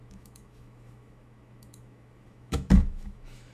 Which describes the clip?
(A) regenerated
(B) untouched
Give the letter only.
A